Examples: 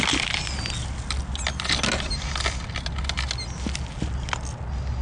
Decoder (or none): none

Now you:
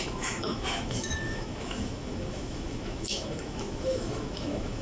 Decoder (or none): autoencoder, DAC-VAE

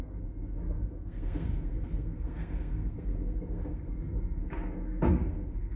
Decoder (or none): codec, SNAC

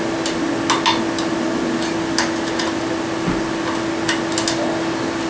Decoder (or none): none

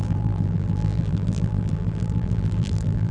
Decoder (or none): vocoder, BigVGAN v2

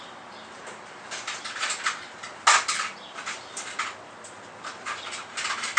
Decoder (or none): none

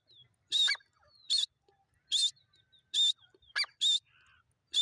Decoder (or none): none